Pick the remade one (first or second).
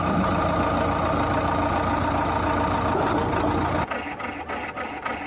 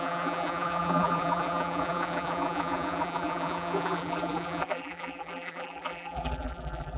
second